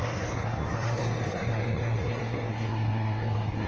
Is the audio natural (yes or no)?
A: no